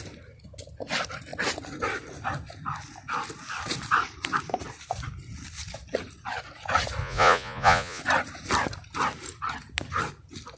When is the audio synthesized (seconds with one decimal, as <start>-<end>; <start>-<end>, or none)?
7.0-8.0

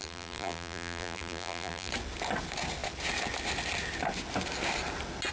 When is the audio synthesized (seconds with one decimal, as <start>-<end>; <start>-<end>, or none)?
0.0-1.9

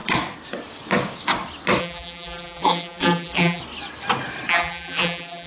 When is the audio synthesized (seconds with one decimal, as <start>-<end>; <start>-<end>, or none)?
1.8-3.6; 4.5-5.5